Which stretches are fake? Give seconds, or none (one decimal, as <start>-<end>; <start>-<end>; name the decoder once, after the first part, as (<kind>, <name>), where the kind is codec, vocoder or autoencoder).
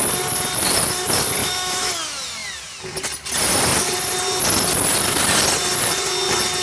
1.4-1.9 (autoencoder, DAC-VAE)